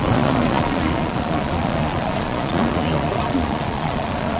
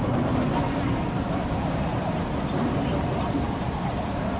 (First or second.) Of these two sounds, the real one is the second